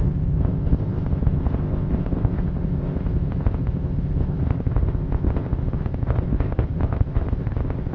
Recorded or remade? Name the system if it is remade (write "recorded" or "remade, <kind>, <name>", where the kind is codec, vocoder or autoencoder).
remade, codec, ZipCodec